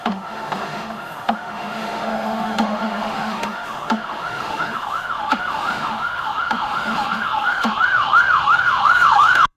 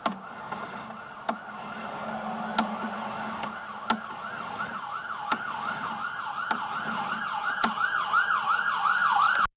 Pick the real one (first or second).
second